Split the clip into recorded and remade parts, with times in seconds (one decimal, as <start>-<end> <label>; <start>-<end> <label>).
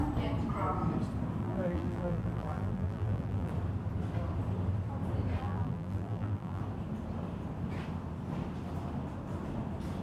0.0-1.4 recorded; 1.4-3.5 remade; 3.5-5.4 recorded; 5.4-6.6 remade; 6.6-10.0 recorded